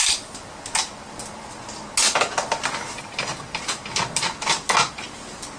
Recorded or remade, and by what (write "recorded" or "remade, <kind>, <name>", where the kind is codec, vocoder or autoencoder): recorded